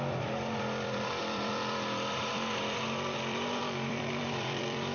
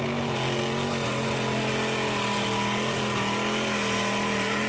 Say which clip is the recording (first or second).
second